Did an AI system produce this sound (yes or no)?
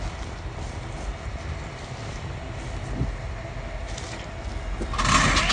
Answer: no